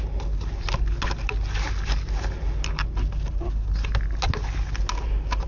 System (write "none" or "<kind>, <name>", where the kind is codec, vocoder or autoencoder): none